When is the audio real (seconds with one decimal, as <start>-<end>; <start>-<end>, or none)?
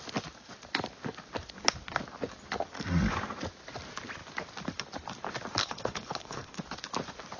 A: 0.0-5.6; 6.6-7.4